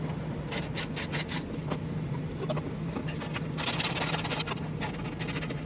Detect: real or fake real